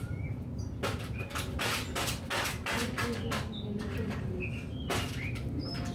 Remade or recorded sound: recorded